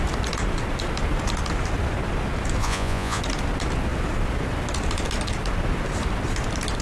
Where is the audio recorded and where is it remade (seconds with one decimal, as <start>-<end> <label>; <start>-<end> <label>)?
0.0-2.6 recorded; 2.6-3.2 remade; 3.2-6.8 recorded